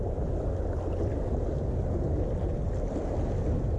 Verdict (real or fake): real